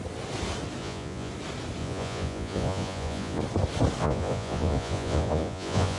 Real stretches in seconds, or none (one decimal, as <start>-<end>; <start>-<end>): 0.0-0.8; 1.3-1.8; 3.4-4.0